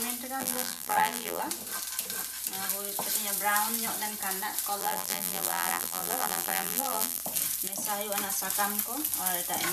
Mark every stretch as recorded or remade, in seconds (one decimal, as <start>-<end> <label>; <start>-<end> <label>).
0.0-0.4 recorded; 0.4-1.4 remade; 1.4-4.8 recorded; 4.8-7.2 remade; 7.2-9.7 recorded